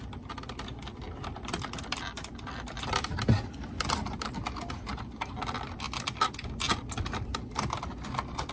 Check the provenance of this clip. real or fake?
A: real